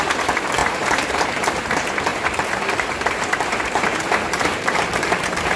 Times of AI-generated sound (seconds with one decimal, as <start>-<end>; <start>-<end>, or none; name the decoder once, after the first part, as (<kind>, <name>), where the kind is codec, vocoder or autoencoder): 0.6-1.3 (vocoder, BigVGAN v2); 2.1-5.6